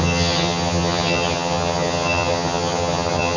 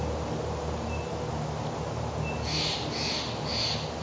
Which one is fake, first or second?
first